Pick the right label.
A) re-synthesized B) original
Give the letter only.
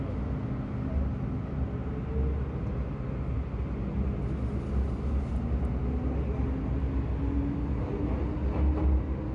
B